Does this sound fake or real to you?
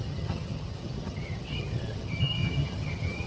fake